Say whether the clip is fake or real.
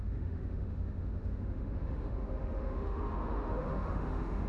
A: fake